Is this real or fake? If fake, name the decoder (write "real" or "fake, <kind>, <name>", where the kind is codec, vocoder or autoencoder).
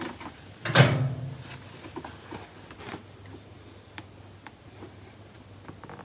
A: real